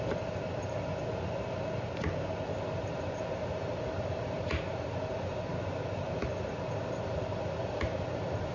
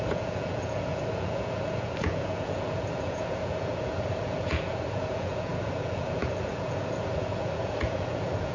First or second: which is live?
first